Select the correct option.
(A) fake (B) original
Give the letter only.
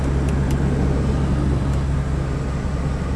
B